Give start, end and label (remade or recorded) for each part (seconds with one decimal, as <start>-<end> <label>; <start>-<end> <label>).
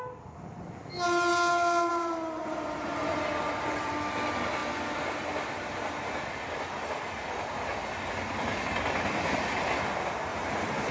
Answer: 0.0-1.9 recorded; 1.9-3.9 remade; 3.9-10.3 recorded; 10.3-10.9 remade